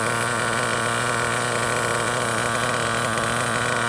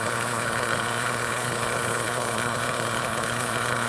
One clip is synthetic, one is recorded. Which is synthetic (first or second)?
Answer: second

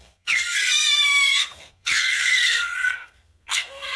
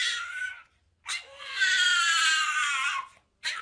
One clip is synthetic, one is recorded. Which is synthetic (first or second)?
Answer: first